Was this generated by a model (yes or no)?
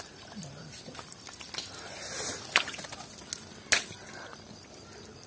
no